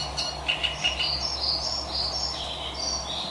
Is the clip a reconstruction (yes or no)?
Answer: no